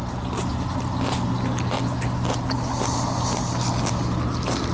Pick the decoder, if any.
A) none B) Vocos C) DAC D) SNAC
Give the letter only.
A